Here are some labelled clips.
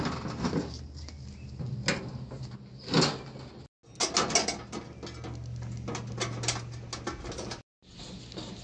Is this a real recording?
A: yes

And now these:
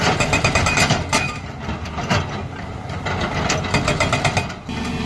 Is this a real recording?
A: yes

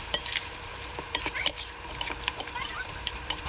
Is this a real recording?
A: no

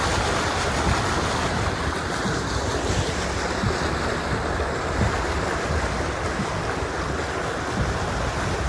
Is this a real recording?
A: yes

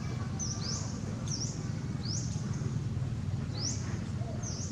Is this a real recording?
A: yes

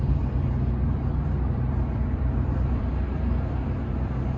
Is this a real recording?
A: no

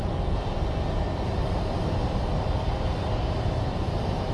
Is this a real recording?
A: yes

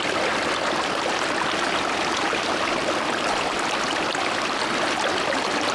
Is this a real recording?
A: yes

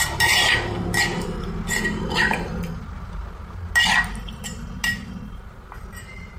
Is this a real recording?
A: yes